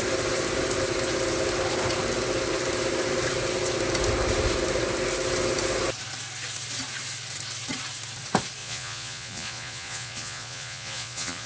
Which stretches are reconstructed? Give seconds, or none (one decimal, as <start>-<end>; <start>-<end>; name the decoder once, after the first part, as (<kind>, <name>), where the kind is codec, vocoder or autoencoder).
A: 8.6-11.5 (vocoder, Vocos)